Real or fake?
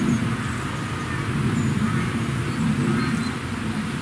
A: real